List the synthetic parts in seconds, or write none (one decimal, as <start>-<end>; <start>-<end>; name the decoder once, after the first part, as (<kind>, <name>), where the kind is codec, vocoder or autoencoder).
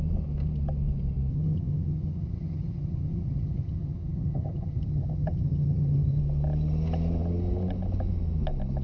1.3-6.2 (vocoder, HiFi-GAN)